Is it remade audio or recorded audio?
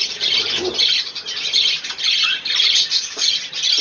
recorded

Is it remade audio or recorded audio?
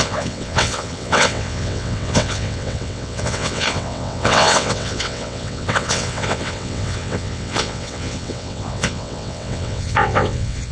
remade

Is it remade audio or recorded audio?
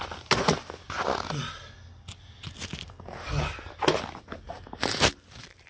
recorded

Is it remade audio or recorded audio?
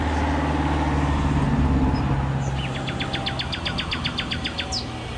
recorded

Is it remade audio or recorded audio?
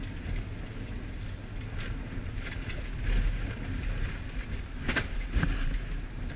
recorded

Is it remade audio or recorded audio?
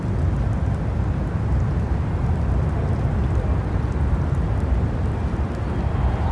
recorded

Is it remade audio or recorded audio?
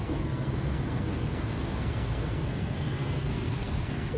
remade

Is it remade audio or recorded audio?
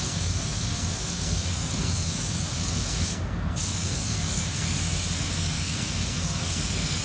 remade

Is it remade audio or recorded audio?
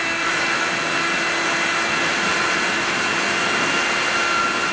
recorded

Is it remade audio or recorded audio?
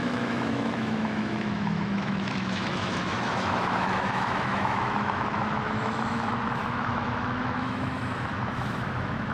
remade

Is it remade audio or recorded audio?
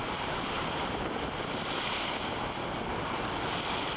recorded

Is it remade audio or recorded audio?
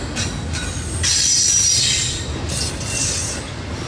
recorded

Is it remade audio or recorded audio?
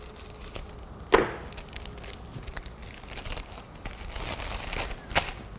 recorded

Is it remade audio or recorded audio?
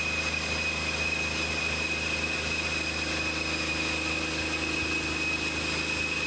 recorded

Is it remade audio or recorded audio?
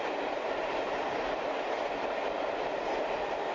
recorded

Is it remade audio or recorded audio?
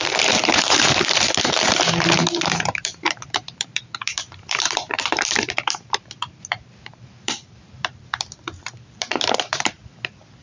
remade